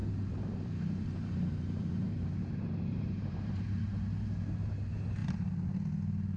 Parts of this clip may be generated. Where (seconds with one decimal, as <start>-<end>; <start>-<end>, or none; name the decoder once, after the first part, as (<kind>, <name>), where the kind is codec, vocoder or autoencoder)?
0.0-3.8 (vocoder, BigVGAN v2); 5.2-5.9